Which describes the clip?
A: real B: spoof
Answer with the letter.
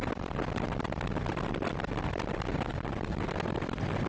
A